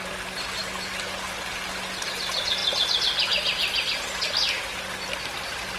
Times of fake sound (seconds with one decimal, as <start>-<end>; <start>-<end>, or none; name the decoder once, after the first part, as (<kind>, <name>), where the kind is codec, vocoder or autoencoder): 0.0-0.6 (vocoder, BigVGAN v2); 2.0-2.6; 5.2-5.8